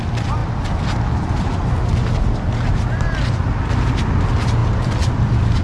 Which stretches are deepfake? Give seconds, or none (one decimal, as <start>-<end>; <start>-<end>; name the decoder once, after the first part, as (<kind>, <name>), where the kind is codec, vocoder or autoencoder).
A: none

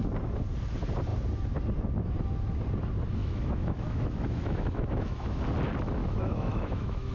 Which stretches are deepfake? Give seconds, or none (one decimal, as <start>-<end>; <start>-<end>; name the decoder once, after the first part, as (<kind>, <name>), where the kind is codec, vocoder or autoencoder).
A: 3.2-5.4 (autoencoder, DAC-VAE); 6.0-7.1

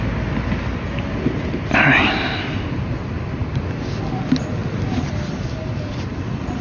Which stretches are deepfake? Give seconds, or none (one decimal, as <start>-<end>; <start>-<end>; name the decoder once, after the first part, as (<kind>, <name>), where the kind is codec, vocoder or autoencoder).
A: none

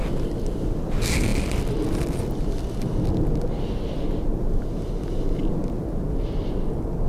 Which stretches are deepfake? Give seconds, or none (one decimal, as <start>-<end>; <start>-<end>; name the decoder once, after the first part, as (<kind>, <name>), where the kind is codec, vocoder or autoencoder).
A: none

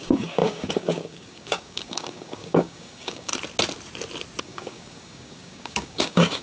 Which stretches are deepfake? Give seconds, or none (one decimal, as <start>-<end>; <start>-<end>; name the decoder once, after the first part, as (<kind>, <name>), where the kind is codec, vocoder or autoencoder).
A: 0.0-3.3 (codec, DAC); 4.4-6.4

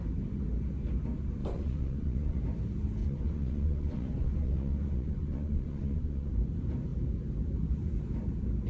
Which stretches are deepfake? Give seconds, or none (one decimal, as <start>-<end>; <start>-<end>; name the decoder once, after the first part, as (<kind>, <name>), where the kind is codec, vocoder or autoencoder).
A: 1.4-2.4 (vocoder, Vocos); 3.0-6.3

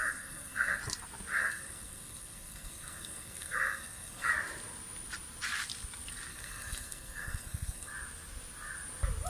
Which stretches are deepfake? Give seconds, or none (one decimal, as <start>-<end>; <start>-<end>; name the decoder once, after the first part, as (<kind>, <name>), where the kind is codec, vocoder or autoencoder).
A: 0.0-0.8 (codec, SNAC); 1.3-4.3; 6.3-7.9